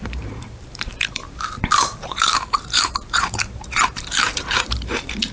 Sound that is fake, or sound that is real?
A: fake